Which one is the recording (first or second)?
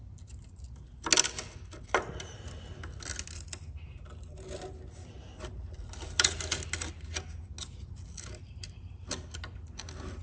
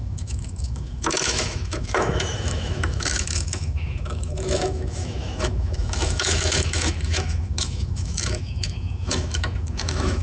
first